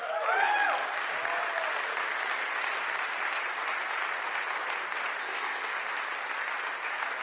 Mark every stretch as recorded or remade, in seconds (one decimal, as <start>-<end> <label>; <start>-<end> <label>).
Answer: 0.0-5.2 recorded; 5.2-5.7 remade; 5.7-7.2 recorded